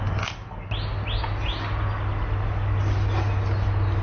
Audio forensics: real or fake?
real